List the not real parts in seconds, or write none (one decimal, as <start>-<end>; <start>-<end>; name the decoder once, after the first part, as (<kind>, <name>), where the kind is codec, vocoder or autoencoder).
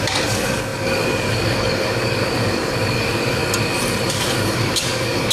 0.0-3.4 (codec, DAC); 4.1-5.3